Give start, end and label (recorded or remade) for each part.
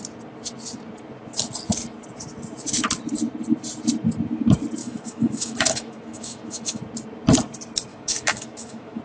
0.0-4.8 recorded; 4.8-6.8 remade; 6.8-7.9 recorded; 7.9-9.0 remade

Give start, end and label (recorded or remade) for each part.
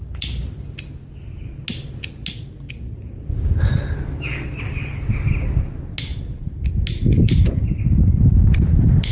0.0-9.1 recorded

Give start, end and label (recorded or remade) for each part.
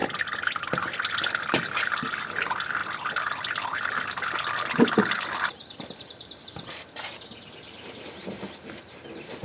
0.0-9.4 recorded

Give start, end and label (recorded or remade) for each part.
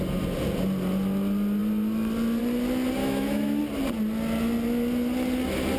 0.0-3.0 recorded; 3.0-3.6 remade; 3.6-5.8 recorded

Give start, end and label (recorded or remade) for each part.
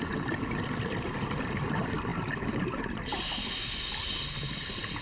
0.0-5.0 recorded